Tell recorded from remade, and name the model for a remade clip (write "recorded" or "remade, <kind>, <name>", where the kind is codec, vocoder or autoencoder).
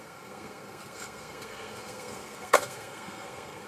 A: remade, codec, SNAC